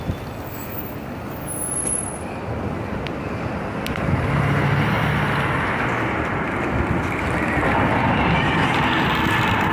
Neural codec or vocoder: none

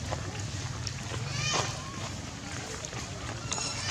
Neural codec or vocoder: none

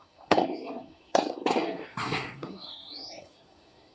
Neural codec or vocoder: codec, SNAC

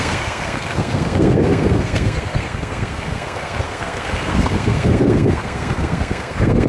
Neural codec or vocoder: codec, SNAC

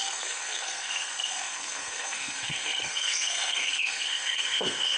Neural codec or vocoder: codec, SNAC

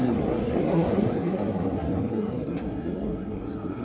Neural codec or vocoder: codec, SNAC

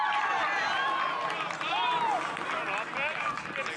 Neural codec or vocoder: none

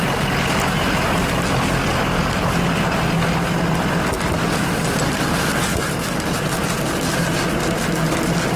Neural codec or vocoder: none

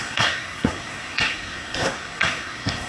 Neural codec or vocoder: codec, SNAC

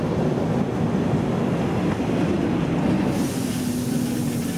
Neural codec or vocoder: none